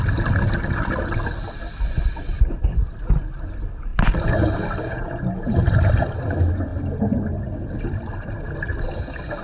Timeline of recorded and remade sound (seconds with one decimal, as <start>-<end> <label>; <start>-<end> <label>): 0.0-9.4 recorded